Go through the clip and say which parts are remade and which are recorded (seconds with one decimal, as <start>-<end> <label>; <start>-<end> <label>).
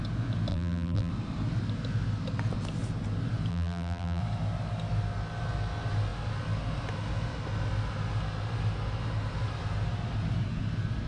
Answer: 0.0-0.5 recorded; 0.5-1.1 remade; 1.1-3.5 recorded; 3.5-4.2 remade; 4.2-11.1 recorded